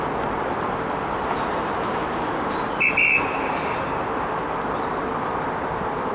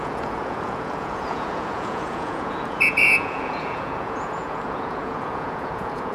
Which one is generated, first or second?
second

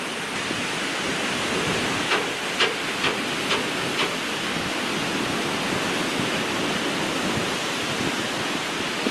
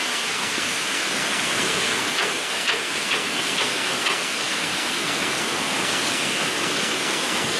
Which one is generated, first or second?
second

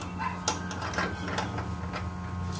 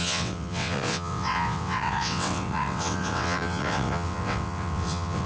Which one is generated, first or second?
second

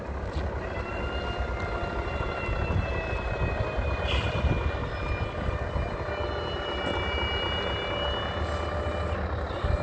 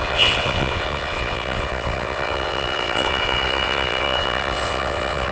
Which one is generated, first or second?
second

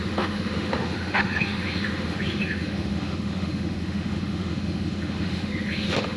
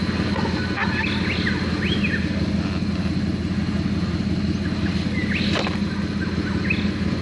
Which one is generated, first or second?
first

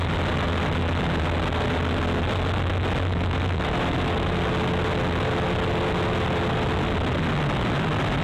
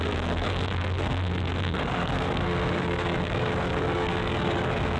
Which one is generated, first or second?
second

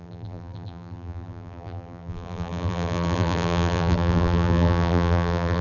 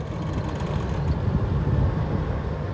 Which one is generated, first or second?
first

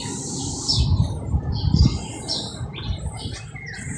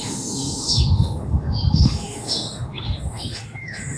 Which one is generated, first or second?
second